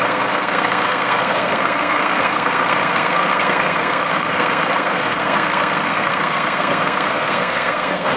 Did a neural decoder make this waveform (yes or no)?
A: yes